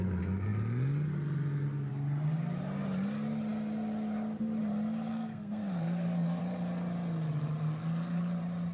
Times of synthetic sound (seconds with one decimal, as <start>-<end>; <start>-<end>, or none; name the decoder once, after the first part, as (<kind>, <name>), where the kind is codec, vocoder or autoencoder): 5.1-6.4 (codec, SNAC)